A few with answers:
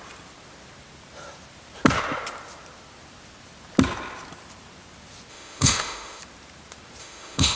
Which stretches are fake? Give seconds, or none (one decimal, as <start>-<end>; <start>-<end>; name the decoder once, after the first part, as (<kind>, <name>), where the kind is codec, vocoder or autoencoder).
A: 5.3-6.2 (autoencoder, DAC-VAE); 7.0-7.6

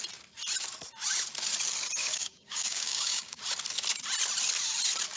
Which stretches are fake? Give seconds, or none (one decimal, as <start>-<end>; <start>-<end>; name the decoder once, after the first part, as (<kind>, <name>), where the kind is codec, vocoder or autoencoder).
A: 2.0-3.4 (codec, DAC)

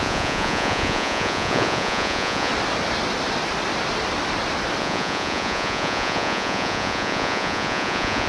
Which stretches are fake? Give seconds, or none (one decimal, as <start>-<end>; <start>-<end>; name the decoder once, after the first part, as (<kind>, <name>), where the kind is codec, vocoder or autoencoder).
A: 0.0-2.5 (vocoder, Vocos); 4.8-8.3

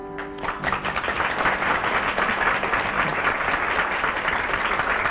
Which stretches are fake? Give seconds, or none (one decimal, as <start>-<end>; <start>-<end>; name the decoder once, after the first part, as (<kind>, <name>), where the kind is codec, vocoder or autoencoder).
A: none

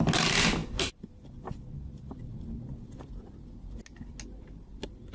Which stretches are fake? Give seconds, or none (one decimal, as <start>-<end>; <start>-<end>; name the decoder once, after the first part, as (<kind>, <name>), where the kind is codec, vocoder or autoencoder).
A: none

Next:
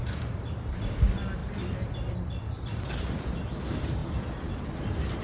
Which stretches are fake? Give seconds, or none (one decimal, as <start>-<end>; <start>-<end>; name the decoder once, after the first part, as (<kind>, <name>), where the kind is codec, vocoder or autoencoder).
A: none

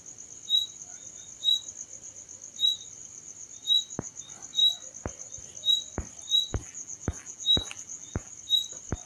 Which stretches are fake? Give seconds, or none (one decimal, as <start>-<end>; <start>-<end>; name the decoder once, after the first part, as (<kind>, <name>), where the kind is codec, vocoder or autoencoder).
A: 6.6-8.3 (vocoder, BigVGAN v2)